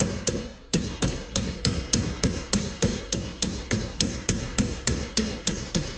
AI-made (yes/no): yes